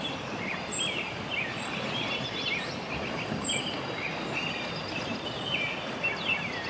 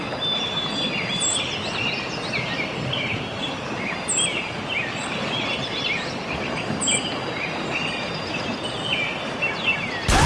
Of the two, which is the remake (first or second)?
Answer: first